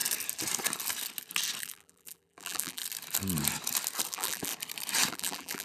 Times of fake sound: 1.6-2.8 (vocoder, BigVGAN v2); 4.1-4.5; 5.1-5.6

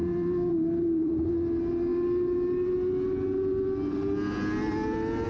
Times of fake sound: 0.0-1.3 (vocoder, BigVGAN v2)

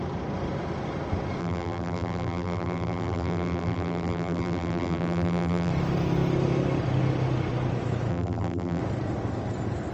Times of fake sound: 1.4-5.7 (vocoder, BigVGAN v2); 8.1-8.8

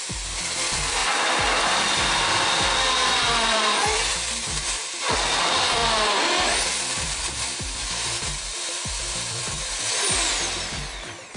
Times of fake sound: 0.0-5.8 (vocoder, BigVGAN v2); 6.4-11.4

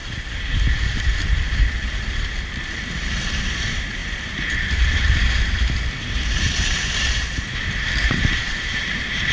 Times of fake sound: 0.0-9.3 (vocoder, BigVGAN v2)

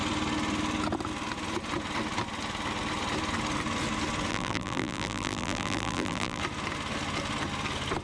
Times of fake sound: 4.3-6.4 (vocoder, BigVGAN v2)

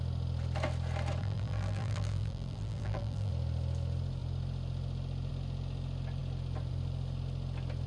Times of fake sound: 1.2-3.3 (vocoder, BigVGAN v2)

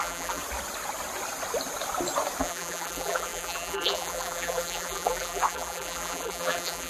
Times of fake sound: 0.0-0.4 (vocoder, BigVGAN v2); 2.4-6.9